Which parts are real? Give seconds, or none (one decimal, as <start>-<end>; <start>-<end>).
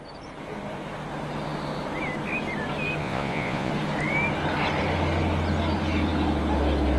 0.0-3.0; 3.7-7.0